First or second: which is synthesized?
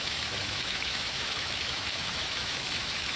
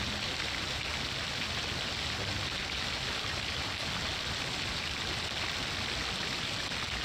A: first